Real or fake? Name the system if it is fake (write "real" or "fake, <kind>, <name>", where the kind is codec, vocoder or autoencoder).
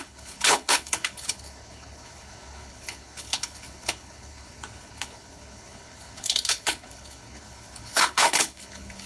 fake, codec, HILCodec